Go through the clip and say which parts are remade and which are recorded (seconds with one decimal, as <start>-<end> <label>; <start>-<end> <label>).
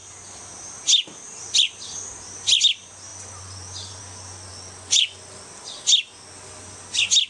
0.0-3.1 recorded; 3.1-4.0 remade; 4.0-4.5 recorded; 4.5-5.4 remade; 5.4-7.3 recorded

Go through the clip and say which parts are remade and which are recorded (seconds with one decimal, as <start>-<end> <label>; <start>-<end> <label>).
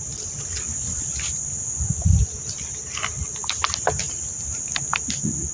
0.0-0.7 recorded; 0.7-4.0 remade; 4.0-5.5 recorded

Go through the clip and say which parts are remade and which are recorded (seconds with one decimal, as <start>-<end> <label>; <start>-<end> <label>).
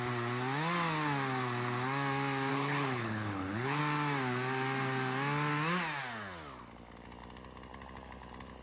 0.0-2.5 recorded; 2.5-3.8 remade; 3.8-8.6 recorded